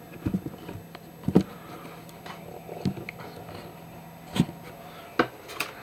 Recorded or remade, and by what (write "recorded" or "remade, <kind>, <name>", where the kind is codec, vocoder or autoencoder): recorded